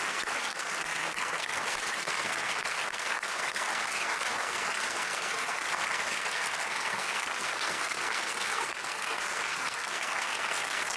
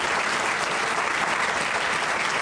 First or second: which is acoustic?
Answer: second